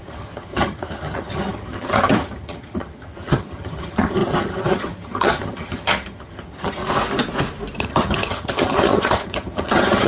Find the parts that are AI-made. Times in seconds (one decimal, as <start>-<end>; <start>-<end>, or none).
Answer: 0.0-6.8; 7.9-10.1